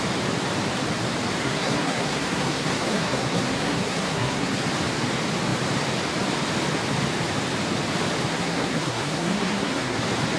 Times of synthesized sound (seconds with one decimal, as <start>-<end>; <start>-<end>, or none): 1.4-4.6; 8.3-10.0